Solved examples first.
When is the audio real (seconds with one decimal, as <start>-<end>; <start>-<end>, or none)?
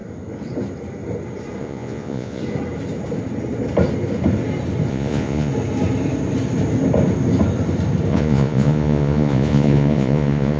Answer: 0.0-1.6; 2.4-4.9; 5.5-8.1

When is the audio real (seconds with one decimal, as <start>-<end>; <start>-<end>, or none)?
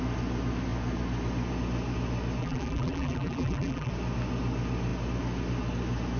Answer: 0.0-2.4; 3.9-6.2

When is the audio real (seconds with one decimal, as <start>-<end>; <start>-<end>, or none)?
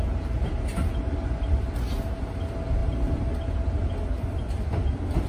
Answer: 0.0-5.3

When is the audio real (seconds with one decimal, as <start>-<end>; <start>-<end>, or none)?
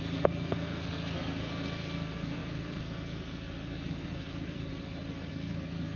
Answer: 4.7-5.3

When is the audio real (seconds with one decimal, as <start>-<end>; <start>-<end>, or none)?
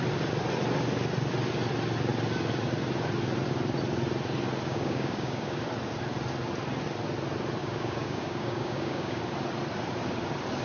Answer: 0.0-4.7; 5.6-7.6; 9.2-10.6